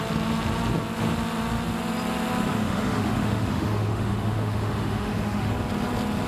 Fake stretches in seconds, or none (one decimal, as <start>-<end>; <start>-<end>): 2.5-5.5